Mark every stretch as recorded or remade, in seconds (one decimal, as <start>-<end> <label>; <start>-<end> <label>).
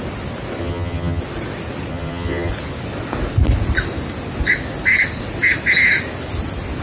0.0-0.6 recorded; 0.6-1.2 remade; 1.2-1.9 recorded; 1.9-2.5 remade; 2.5-6.8 recorded